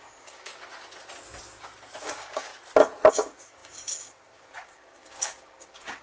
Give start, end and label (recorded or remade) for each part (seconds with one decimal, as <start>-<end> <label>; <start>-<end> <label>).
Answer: 0.0-0.5 remade; 0.5-2.0 recorded; 2.0-2.5 remade; 2.5-3.1 recorded; 3.1-6.0 remade

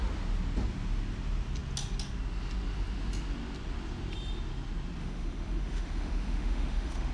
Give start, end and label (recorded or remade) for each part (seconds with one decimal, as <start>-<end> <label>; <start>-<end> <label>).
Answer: 0.0-5.0 recorded; 5.0-7.1 remade

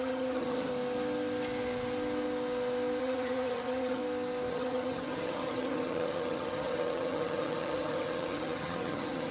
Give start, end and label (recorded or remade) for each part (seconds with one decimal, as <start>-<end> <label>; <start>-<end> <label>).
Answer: 0.0-0.7 remade; 0.7-3.0 recorded; 3.0-4.0 remade; 4.0-4.5 recorded; 4.5-9.3 remade

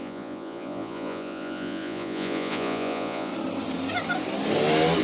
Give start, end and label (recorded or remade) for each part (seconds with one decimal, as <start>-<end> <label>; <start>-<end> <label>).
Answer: 0.0-3.3 remade; 3.3-5.0 recorded

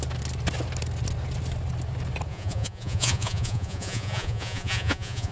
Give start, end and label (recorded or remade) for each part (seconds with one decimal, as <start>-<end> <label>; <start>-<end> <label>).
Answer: 0.0-2.3 recorded; 2.3-5.3 remade

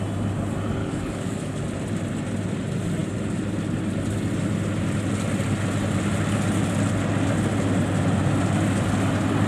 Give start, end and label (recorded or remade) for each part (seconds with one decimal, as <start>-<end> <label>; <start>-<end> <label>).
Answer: 0.0-0.8 recorded; 0.8-1.6 remade; 1.6-9.5 recorded

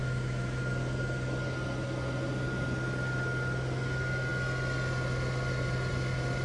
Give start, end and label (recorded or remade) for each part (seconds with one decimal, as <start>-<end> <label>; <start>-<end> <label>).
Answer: 0.0-0.6 remade; 0.6-6.4 recorded

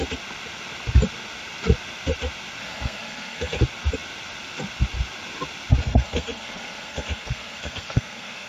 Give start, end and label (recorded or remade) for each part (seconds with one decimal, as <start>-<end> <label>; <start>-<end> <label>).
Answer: 0.0-2.6 recorded; 2.6-3.6 remade; 3.6-5.8 recorded; 5.8-8.5 remade